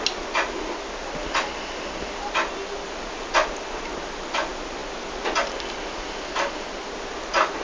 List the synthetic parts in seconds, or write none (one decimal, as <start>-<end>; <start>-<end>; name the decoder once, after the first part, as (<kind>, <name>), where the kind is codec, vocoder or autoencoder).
none